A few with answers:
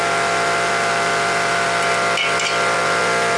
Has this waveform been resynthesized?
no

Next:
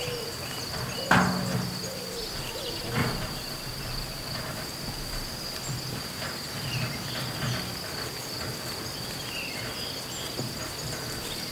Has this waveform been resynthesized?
no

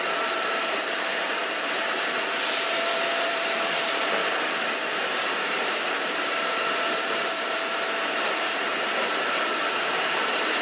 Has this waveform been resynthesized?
yes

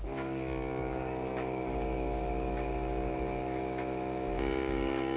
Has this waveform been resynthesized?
yes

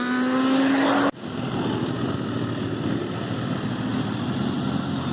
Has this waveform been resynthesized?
no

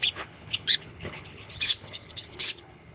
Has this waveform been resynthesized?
yes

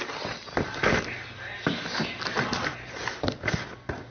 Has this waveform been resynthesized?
no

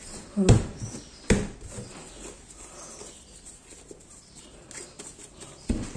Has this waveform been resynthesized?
no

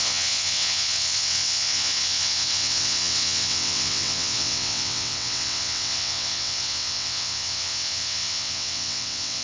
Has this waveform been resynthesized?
yes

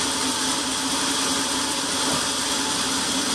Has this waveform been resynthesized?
no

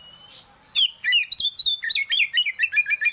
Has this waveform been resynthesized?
no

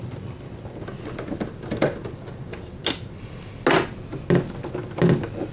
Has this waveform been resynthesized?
no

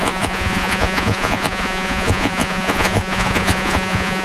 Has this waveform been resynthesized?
yes